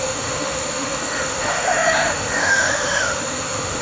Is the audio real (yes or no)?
no